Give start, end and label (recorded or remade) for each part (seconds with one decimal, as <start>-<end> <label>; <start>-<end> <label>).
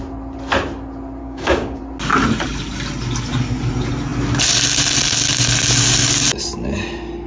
0.0-1.2 recorded; 1.2-1.8 remade; 1.8-7.3 recorded